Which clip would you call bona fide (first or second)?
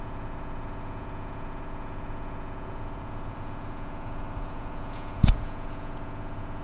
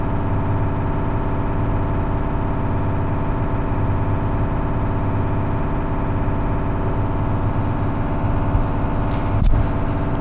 second